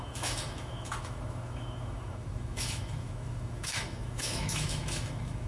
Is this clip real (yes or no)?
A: no